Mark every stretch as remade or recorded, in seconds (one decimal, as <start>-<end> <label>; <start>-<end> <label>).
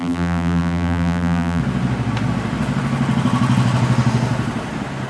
0.0-1.6 remade; 1.6-5.1 recorded